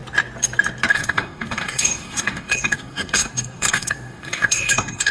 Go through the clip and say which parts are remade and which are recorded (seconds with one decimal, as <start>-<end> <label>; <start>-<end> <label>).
0.0-0.9 recorded; 0.9-5.1 remade